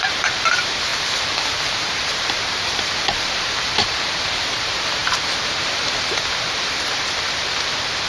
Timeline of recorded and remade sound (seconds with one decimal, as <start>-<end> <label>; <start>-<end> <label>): 0.0-0.9 remade; 0.9-1.7 recorded; 1.7-8.1 remade